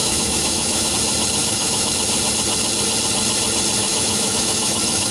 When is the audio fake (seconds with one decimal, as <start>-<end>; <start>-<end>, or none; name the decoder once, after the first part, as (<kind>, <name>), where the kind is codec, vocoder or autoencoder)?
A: 0.0-0.9 (autoencoder, DAC-VAE); 1.4-1.9; 3.8-5.1